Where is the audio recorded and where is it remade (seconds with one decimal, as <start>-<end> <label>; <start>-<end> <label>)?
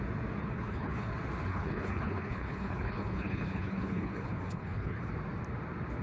0.0-0.4 recorded; 0.4-1.1 remade; 1.1-1.5 recorded; 1.5-5.1 remade; 5.1-6.0 recorded